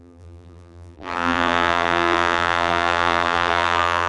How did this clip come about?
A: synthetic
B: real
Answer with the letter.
A